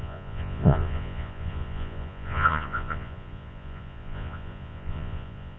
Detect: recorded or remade remade